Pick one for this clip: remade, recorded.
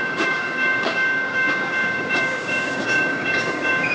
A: remade